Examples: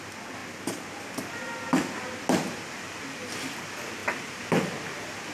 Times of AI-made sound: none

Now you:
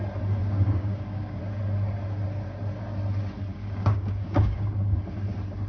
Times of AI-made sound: 0.4-1.4 (codec, DAC); 3.5-4.7